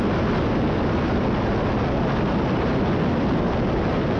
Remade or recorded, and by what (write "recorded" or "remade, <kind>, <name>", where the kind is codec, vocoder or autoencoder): recorded